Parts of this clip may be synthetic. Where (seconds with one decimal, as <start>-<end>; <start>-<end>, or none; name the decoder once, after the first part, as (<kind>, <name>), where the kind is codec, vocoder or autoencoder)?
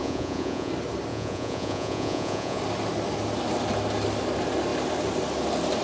0.0-0.7 (vocoder, Vocos); 1.1-2.6